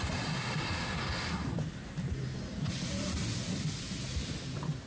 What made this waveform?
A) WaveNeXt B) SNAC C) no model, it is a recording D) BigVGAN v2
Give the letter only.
C